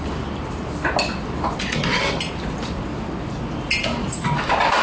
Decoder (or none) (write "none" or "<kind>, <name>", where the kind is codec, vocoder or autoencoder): vocoder, BigVGAN v2